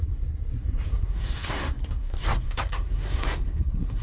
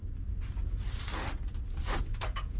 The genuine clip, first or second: second